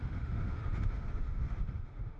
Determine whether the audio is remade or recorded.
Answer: remade